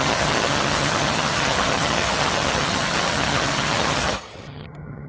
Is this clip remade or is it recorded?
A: remade